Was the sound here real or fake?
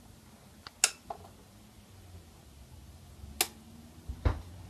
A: real